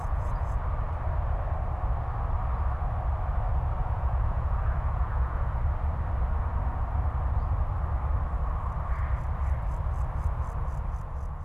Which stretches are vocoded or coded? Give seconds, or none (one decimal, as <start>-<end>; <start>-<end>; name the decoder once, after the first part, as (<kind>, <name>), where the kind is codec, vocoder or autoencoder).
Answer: 0.0-0.6 (vocoder, Vocos); 3.8-5.6